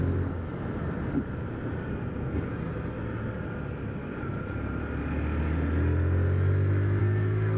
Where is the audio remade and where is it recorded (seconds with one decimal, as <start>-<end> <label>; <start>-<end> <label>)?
0.0-7.0 recorded; 7.0-7.6 remade